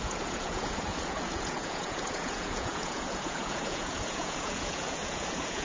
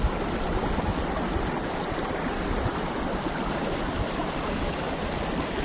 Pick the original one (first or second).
second